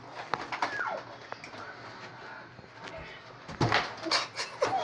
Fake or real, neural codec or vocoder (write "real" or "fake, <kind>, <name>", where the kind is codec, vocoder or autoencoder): real